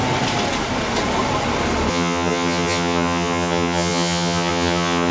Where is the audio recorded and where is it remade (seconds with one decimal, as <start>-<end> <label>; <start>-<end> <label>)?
0.0-1.9 recorded; 1.9-5.1 remade